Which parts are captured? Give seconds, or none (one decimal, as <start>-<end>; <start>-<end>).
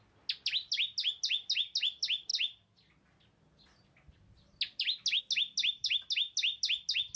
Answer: 0.0-7.2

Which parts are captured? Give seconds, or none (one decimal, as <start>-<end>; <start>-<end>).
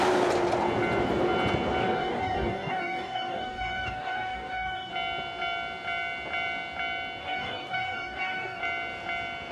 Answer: 0.0-1.8; 4.9-7.2; 8.6-9.5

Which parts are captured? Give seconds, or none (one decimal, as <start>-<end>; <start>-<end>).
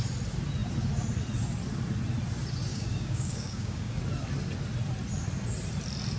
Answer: 0.0-2.7; 4.0-6.2